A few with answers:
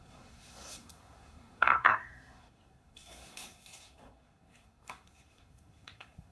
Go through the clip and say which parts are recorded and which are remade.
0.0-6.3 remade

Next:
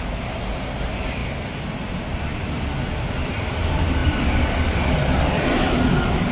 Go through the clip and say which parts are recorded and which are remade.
0.0-6.3 recorded

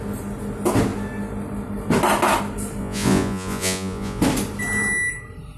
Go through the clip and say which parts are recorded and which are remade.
0.0-2.8 recorded; 2.8-4.2 remade; 4.2-5.6 recorded

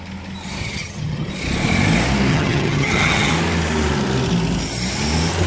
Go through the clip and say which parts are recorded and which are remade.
0.0-0.6 recorded; 0.6-1.3 remade; 1.3-2.3 recorded; 2.3-3.3 remade; 3.3-5.5 recorded

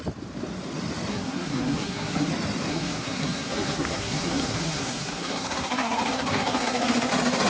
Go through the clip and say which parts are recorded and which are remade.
0.0-1.1 recorded; 1.1-2.3 remade; 2.3-2.7 recorded; 2.7-7.1 remade; 7.1-7.5 recorded

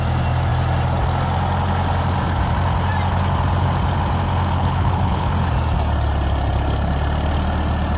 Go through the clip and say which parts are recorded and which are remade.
0.0-4.5 recorded; 4.5-5.3 remade; 5.3-8.0 recorded

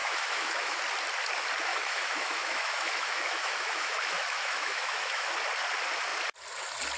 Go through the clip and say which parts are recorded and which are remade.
0.0-0.8 remade; 0.8-1.7 recorded; 1.7-5.3 remade; 5.3-7.0 recorded

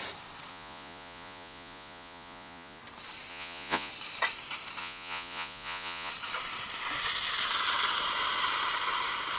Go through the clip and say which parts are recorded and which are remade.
0.0-0.5 recorded; 0.5-2.8 remade; 2.8-3.3 recorded; 3.3-3.9 remade; 3.9-4.8 recorded; 4.8-6.1 remade; 6.1-9.4 recorded